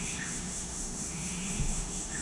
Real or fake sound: fake